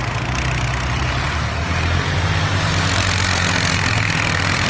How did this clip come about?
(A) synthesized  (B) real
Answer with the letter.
B